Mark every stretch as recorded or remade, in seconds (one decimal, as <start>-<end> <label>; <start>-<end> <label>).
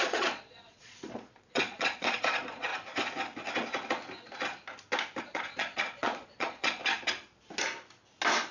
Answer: 0.0-2.7 remade; 2.7-5.2 recorded; 5.2-6.8 remade; 6.8-8.5 recorded